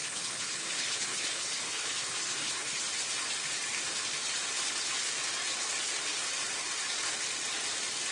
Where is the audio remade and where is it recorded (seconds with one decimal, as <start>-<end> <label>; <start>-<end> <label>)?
0.0-2.8 remade; 2.8-8.1 recorded